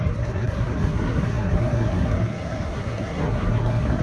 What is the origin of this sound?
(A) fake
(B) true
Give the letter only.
A